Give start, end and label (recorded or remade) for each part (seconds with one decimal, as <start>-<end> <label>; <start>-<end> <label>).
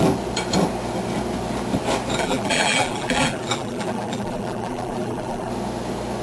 0.0-2.2 recorded; 2.2-5.5 remade; 5.5-6.2 recorded